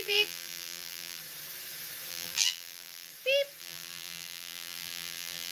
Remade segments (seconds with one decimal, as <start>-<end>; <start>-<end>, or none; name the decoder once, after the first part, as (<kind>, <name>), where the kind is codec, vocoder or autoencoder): 0.0-1.2 (vocoder, BigVGAN v2); 2.1-3.1; 3.6-5.5